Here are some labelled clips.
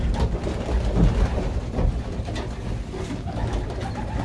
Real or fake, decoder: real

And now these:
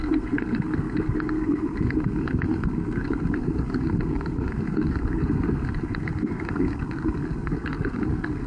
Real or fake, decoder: fake, codec, SNAC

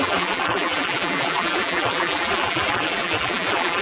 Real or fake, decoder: fake, vocoder, BigVGAN v2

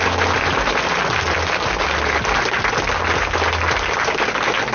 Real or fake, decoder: real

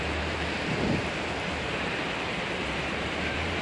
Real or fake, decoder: fake, vocoder, BigVGAN v2